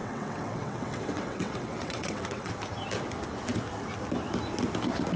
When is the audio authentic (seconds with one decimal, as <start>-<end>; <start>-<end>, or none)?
2.5-5.2